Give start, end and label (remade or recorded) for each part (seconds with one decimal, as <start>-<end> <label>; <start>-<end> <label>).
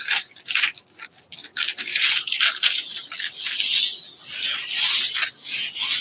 0.0-1.5 recorded; 1.5-2.8 remade; 2.8-6.0 recorded